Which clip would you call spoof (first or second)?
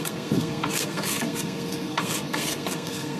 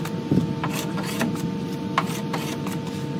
first